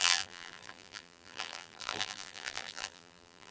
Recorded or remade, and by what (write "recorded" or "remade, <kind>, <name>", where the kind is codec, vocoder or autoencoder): remade, vocoder, BigVGAN v2